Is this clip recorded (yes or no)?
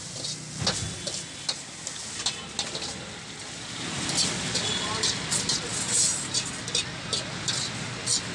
yes